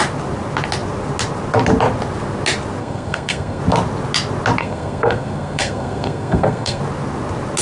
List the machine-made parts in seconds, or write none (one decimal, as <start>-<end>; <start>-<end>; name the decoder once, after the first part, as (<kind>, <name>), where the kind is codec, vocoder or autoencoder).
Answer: 2.8-3.6 (codec, SNAC); 4.6-6.8